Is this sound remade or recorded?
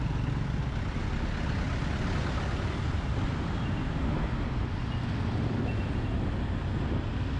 recorded